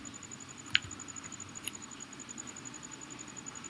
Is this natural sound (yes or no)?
yes